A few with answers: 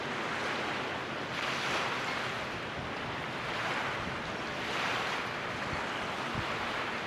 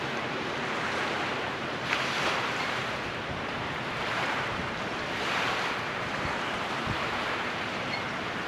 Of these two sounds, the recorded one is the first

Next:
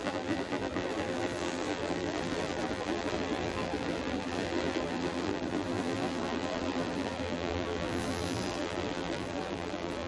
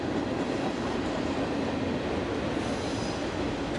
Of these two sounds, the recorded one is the second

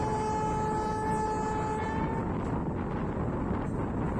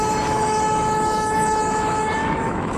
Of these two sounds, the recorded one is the first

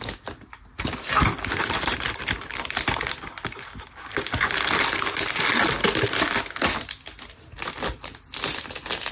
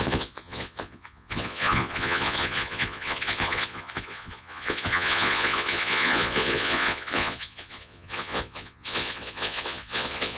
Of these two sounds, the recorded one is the first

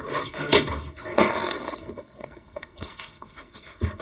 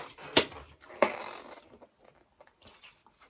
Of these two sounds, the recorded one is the second